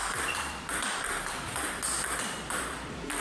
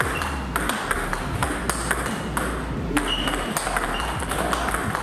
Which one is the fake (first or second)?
first